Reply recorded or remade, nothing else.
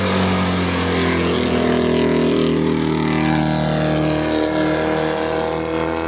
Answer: recorded